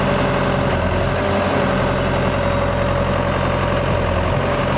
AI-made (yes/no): no